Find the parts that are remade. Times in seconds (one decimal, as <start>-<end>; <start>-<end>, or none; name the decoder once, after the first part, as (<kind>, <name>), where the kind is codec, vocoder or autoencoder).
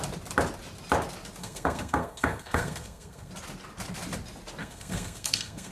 1.4-3.3 (codec, SNAC); 4.6-5.7